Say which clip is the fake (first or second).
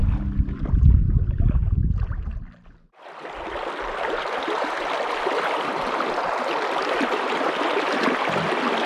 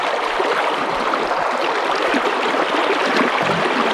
second